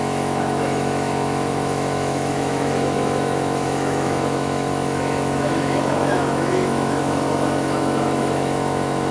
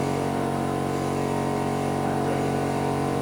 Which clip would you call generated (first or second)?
first